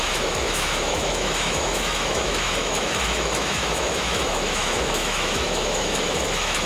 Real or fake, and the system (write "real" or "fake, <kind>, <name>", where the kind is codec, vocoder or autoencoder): fake, autoencoder, DAC-VAE